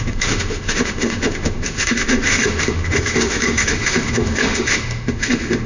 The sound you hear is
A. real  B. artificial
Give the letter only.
B